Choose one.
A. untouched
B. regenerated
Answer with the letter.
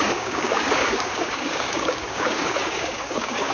B